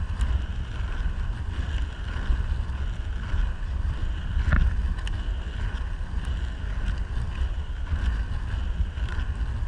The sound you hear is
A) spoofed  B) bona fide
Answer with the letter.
B